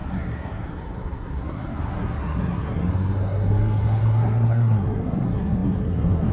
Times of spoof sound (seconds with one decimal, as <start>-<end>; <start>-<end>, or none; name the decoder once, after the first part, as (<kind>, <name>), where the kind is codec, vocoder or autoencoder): 0.0-6.3 (codec, SNAC)